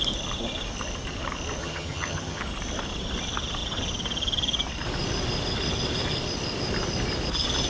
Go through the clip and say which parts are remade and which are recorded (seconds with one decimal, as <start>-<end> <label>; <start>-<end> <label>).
0.0-1.6 recorded; 1.6-2.4 remade; 2.4-7.7 recorded

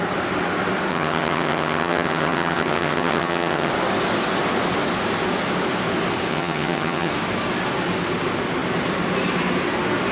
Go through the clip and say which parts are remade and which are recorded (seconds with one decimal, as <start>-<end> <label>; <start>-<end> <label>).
0.0-0.9 recorded; 0.9-3.7 remade; 3.7-6.3 recorded; 6.3-7.1 remade; 7.1-10.1 recorded

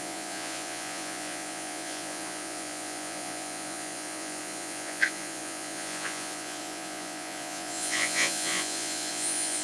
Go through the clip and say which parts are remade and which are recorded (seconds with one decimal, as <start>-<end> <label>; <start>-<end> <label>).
0.0-9.6 remade

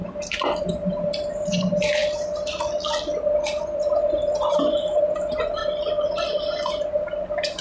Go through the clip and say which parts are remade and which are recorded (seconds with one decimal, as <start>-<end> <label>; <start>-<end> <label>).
0.0-2.0 remade; 2.0-4.5 recorded; 4.5-5.6 remade; 5.6-6.9 recorded; 6.9-7.6 remade

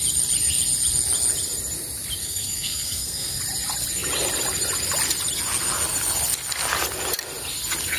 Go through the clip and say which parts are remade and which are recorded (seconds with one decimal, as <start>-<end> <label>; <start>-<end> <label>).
0.0-2.2 recorded; 2.2-3.4 remade; 3.4-8.0 recorded

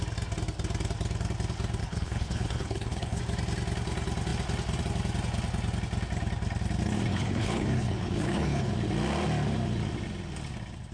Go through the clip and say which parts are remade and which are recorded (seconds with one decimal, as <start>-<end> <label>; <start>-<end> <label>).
0.0-1.8 recorded; 1.8-3.2 remade; 3.2-7.1 recorded; 7.1-8.7 remade; 8.7-10.9 recorded